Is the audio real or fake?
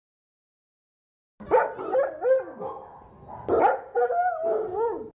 real